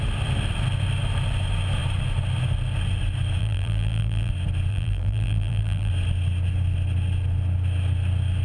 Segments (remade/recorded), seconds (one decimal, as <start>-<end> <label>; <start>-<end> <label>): 0.0-3.4 recorded; 3.4-4.3 remade; 4.3-4.7 recorded; 4.7-5.9 remade; 5.9-8.4 recorded